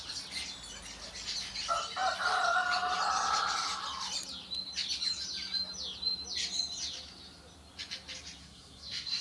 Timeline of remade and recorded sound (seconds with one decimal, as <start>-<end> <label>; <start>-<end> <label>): 0.0-8.4 recorded; 8.4-9.2 remade